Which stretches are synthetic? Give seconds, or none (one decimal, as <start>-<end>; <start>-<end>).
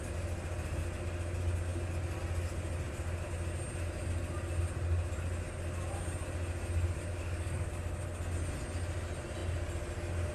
7.1-7.7